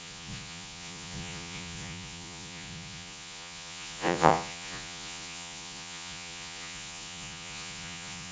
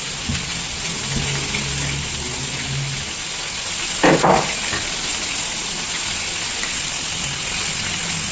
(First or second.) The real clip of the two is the second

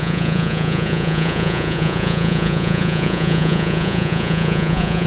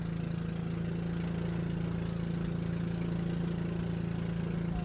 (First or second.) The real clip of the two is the second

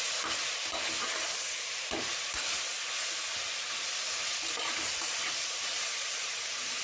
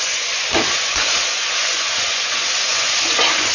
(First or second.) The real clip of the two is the first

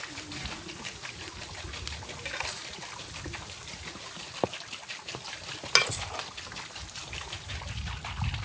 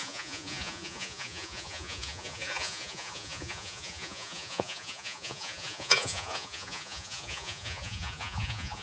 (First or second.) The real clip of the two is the first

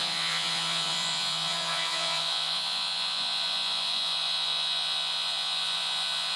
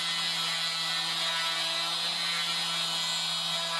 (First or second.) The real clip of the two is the second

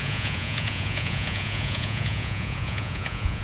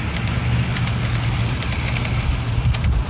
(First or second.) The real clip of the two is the second